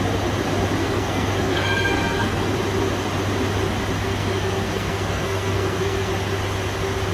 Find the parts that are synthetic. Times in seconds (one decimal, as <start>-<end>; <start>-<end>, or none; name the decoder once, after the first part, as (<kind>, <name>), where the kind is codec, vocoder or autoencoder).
0.8-2.5 (codec, SNAC); 4.0-6.1